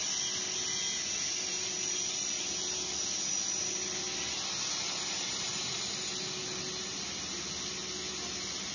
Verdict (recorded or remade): recorded